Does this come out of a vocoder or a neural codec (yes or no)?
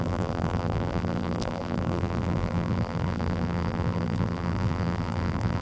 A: yes